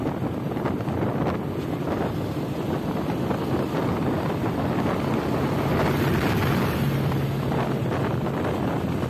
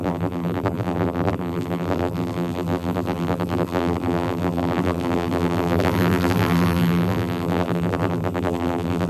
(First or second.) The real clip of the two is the first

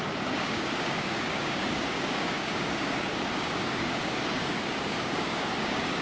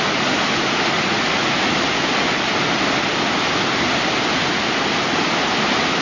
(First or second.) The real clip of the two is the second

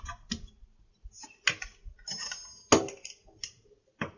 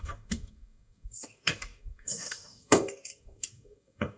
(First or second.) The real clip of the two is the first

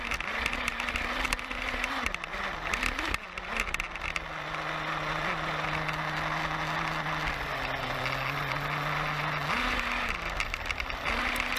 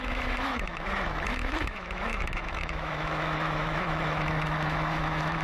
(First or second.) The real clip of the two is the first